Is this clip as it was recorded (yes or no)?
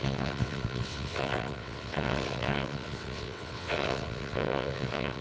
no